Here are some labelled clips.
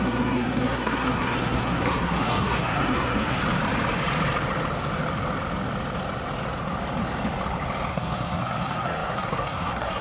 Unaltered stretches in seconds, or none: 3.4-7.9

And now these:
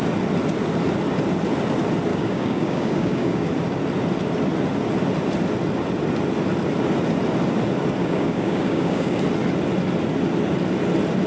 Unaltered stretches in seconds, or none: 0.0-2.1; 3.5-8.0; 9.2-11.3

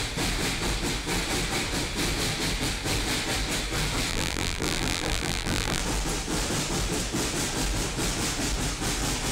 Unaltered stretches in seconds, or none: 0.0-4.1; 5.8-9.3

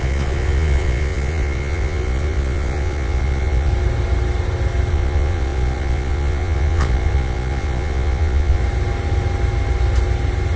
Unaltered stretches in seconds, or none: 3.7-4.9; 8.6-10.6